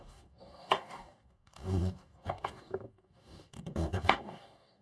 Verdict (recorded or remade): remade